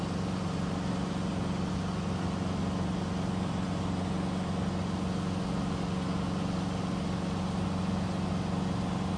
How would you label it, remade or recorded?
recorded